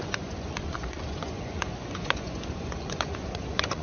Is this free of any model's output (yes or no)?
no